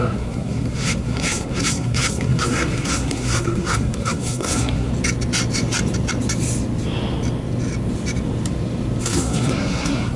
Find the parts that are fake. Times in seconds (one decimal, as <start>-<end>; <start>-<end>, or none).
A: 0.0-4.9; 9.0-10.2